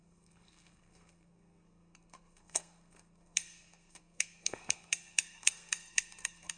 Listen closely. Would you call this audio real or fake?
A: fake